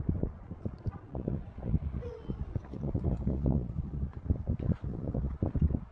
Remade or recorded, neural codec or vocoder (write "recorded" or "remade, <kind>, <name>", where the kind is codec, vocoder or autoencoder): remade, vocoder, Vocos